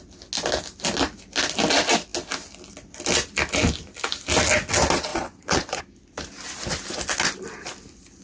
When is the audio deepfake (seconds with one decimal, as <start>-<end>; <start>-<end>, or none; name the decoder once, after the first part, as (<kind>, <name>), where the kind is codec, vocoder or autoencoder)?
5.1-5.8 (vocoder, Vocos)